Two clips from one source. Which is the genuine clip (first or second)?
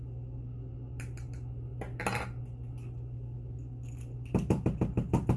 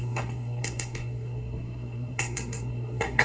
first